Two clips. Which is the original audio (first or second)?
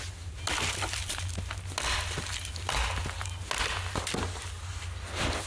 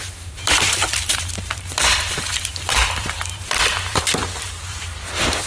first